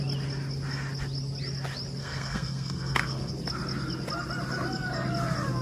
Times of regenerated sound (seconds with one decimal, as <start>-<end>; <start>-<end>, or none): 2.0-3.3